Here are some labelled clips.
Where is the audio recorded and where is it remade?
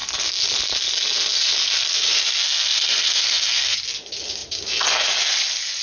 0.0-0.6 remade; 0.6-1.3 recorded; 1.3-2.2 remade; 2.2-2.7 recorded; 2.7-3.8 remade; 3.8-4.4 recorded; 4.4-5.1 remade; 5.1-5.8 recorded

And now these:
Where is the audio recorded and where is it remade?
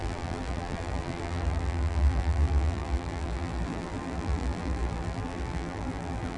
0.0-6.4 remade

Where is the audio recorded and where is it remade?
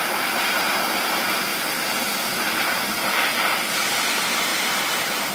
0.0-1.5 recorded; 1.5-2.8 remade; 2.8-4.5 recorded; 4.5-5.3 remade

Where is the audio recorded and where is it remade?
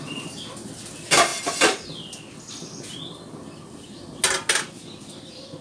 0.0-1.3 remade; 1.3-4.7 recorded; 4.7-5.6 remade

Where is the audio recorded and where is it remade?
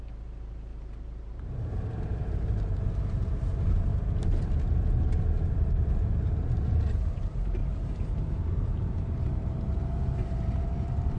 0.0-3.9 remade; 3.9-5.9 recorded; 5.9-11.2 remade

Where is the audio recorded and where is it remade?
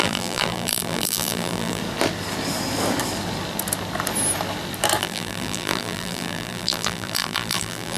0.0-1.8 remade; 1.8-5.0 recorded; 5.0-8.0 remade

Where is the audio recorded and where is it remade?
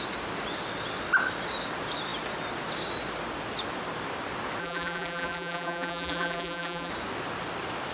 0.0-4.6 recorded; 4.6-6.9 remade; 6.9-7.9 recorded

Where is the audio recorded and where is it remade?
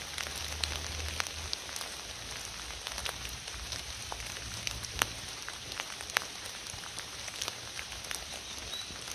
0.0-3.0 recorded; 3.0-7.9 remade; 7.9-9.1 recorded